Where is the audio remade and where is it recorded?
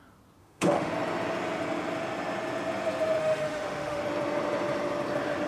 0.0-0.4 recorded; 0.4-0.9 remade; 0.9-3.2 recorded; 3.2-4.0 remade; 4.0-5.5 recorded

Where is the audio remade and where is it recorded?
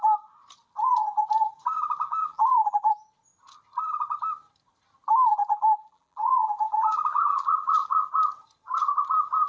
0.0-2.2 recorded; 2.2-2.9 remade; 2.9-5.4 recorded; 5.4-8.0 remade; 8.0-9.5 recorded